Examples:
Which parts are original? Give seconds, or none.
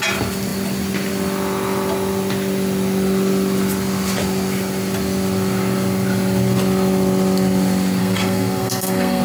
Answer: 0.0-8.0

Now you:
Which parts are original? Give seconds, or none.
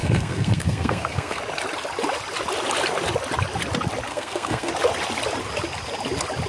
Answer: 1.4-4.1; 4.7-6.5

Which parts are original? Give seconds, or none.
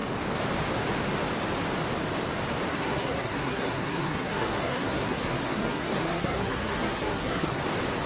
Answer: 0.0-2.7; 7.6-8.1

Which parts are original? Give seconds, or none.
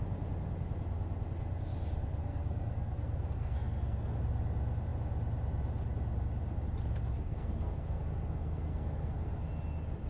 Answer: 0.0-2.2; 4.2-7.0; 9.5-10.1